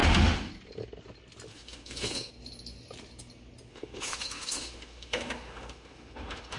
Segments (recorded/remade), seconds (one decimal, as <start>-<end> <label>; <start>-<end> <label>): 0.0-0.5 remade; 0.5-1.5 recorded; 1.5-2.3 remade; 2.3-3.7 recorded; 3.7-6.6 remade

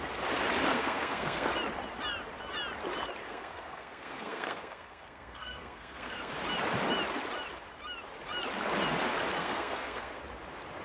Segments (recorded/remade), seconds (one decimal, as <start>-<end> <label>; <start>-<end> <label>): 0.0-0.7 recorded; 0.7-1.5 remade; 1.5-3.2 recorded; 3.2-6.3 remade; 6.3-9.4 recorded; 9.4-10.2 remade; 10.2-10.8 recorded

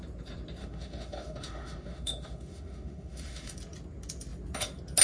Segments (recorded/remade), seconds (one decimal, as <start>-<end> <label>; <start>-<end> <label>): 0.0-0.6 recorded; 0.6-3.6 remade; 3.6-5.0 recorded

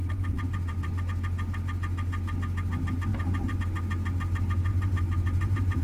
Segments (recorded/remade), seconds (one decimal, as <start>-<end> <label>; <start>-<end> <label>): 0.0-1.0 remade; 1.0-3.1 recorded; 3.1-3.6 remade; 3.6-4.7 recorded; 4.7-5.8 remade

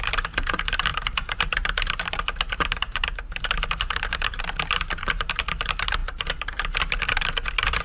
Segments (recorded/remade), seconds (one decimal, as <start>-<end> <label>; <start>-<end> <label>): 0.0-0.9 recorded; 0.9-5.3 remade; 5.3-7.8 recorded

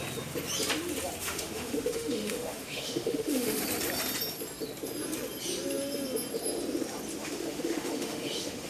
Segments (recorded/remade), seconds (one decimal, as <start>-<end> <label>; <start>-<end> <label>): 0.0-1.2 recorded; 1.2-3.6 remade; 3.6-7.2 recorded; 7.2-8.7 remade

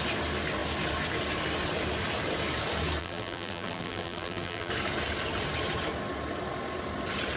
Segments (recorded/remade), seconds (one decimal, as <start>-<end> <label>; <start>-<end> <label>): 0.0-3.0 recorded; 3.0-4.7 remade; 4.7-7.4 recorded

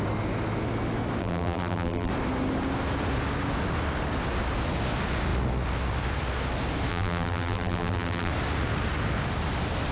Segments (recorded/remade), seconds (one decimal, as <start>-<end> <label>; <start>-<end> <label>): 0.0-1.2 recorded; 1.2-2.1 remade; 2.1-6.9 recorded; 6.9-8.3 remade; 8.3-9.9 recorded